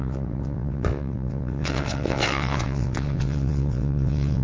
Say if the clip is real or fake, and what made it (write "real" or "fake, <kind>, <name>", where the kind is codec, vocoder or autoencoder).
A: fake, vocoder, WaveNeXt